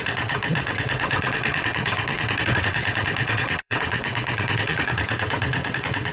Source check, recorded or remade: remade